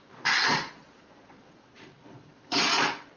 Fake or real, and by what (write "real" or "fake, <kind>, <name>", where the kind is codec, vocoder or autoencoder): fake, vocoder, Vocos